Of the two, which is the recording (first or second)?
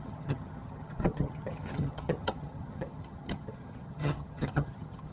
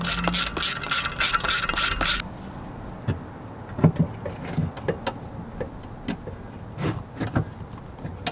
second